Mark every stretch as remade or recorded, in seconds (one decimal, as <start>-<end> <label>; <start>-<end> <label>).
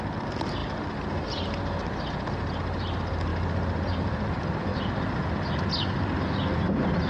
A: 0.0-7.1 recorded